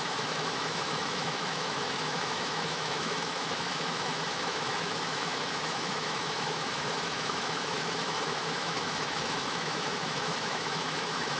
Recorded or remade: remade